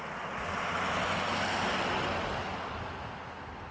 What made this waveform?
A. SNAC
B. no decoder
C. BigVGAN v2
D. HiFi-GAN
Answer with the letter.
B